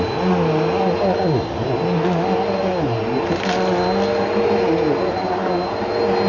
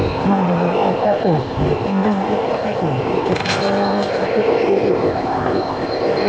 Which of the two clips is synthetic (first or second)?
second